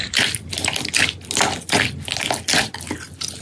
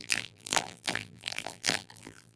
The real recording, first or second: first